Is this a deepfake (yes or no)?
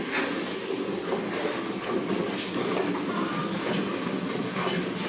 no